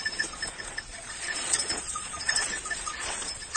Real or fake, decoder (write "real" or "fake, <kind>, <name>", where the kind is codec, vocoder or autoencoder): fake, vocoder, Vocos